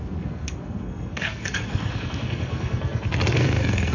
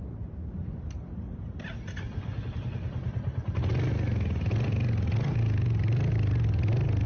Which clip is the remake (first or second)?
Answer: first